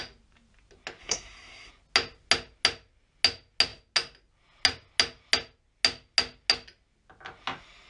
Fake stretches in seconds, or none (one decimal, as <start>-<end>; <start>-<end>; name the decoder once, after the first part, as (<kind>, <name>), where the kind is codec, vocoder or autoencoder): 1.0-1.7 (codec, SNAC)